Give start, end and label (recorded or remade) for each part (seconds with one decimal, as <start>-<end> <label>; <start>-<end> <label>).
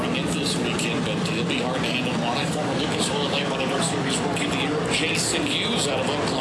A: 0.0-2.4 recorded; 2.4-4.5 remade; 4.5-6.4 recorded